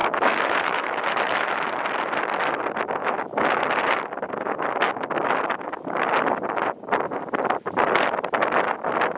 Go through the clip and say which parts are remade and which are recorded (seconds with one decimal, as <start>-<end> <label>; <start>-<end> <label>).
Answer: 0.0-1.7 remade; 1.7-3.0 recorded; 3.0-3.6 remade; 3.6-9.2 recorded

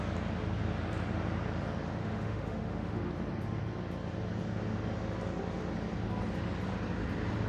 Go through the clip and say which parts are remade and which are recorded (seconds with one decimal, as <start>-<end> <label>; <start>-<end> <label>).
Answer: 0.0-2.0 recorded; 2.0-3.1 remade; 3.1-7.5 recorded

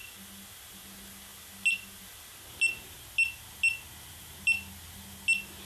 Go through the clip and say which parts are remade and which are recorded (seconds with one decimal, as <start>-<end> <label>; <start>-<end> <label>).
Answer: 0.0-5.6 recorded

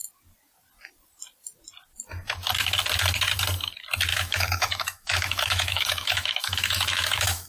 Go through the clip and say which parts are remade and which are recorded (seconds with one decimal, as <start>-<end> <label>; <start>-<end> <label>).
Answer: 0.0-4.1 recorded; 4.1-7.5 remade

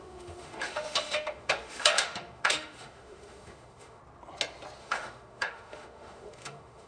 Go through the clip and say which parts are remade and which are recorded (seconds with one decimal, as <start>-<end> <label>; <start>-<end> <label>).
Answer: 0.0-4.0 remade; 4.0-4.8 recorded; 4.8-6.9 remade

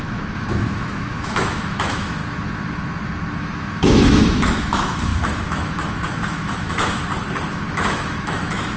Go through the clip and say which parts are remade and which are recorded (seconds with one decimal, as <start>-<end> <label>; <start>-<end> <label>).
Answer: 0.0-2.2 remade; 2.2-3.4 recorded; 3.4-7.0 remade; 7.0-7.7 recorded; 7.7-8.8 remade